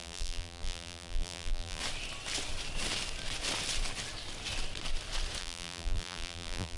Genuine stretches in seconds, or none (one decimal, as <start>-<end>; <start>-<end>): 1.8-5.4